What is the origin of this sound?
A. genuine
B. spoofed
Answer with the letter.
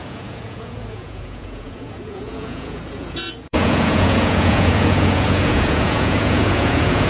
B